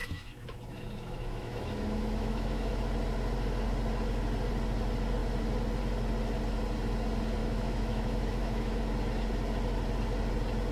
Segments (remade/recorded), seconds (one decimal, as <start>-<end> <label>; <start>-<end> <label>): 0.0-2.7 remade; 2.7-7.4 recorded; 7.4-8.8 remade; 8.8-10.7 recorded